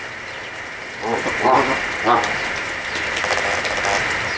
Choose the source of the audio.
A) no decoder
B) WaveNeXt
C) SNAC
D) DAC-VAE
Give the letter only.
A